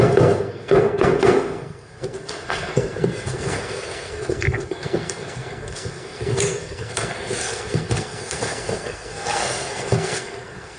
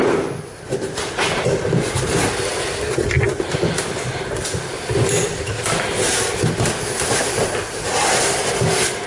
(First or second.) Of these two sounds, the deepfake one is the first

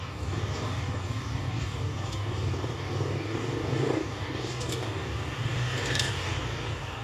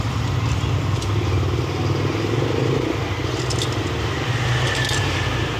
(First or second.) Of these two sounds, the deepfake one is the first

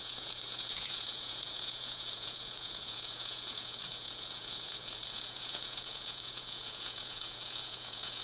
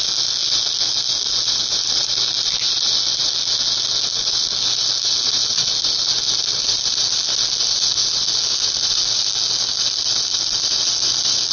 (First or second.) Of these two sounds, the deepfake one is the first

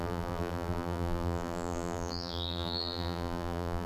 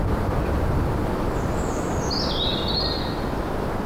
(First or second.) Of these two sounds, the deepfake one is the first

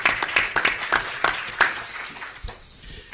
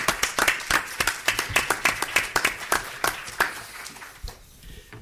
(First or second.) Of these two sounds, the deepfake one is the second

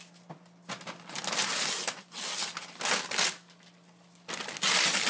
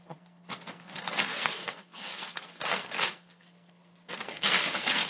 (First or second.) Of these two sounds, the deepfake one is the second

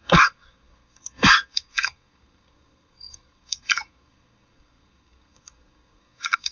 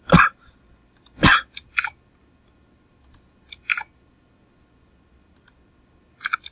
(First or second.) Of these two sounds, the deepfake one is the first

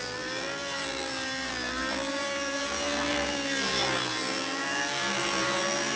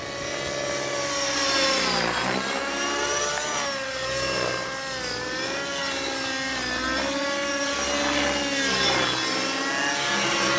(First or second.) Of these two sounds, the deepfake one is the first